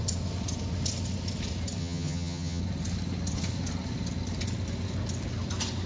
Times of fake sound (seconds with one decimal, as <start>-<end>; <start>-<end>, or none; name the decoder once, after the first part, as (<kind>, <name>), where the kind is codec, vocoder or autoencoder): 1.8-2.6 (vocoder, HiFi-GAN)